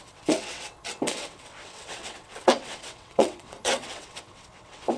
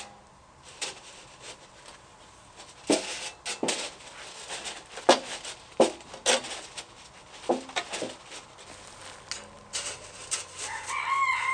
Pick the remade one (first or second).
first